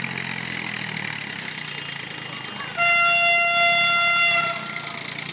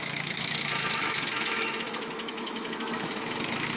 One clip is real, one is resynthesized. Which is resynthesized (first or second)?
second